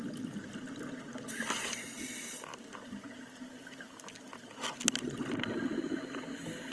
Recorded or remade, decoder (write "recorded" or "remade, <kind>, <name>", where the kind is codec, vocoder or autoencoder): recorded